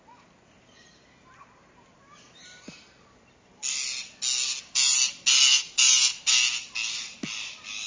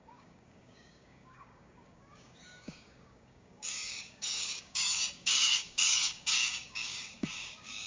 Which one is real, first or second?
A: first